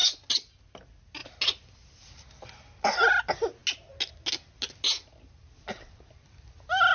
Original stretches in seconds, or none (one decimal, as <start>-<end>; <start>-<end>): 0.0-5.4